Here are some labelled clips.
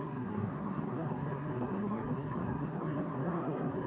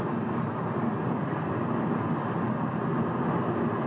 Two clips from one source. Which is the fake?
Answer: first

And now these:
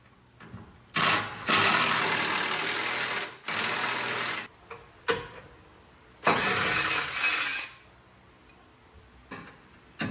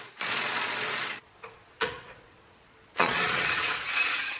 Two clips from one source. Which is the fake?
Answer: second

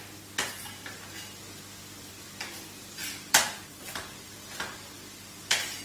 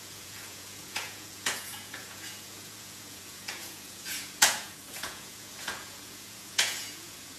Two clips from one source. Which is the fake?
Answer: second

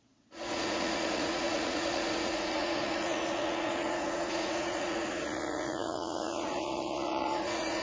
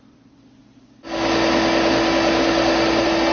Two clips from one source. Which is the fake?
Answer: first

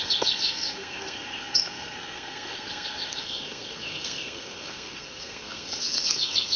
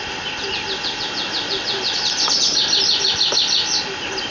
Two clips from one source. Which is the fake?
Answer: first